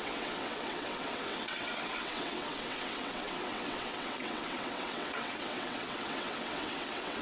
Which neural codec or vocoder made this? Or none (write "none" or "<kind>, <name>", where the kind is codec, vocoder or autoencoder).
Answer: vocoder, WaveNeXt